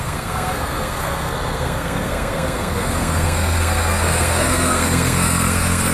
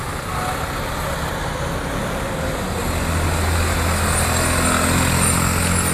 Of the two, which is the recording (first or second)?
second